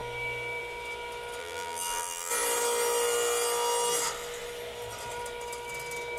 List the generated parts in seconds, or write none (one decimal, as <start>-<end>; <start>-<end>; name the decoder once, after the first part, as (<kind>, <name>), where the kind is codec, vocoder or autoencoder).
1.4-2.3 (vocoder, BigVGAN v2)